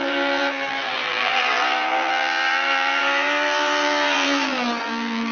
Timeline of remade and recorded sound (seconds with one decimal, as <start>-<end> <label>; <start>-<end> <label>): 0.0-5.3 remade